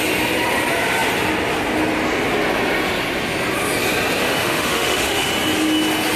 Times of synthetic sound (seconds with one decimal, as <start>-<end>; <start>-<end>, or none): 4.2-5.3